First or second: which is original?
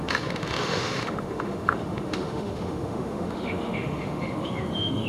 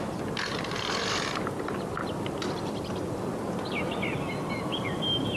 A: second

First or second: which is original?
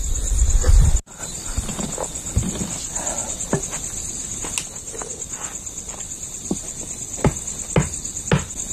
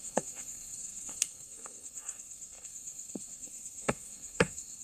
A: first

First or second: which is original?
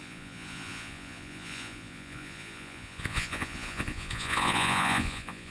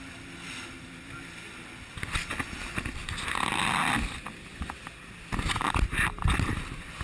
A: second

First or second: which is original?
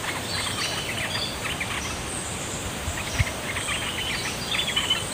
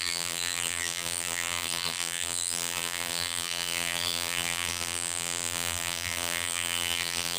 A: first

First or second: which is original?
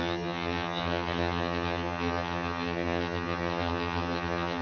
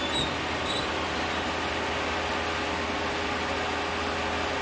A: second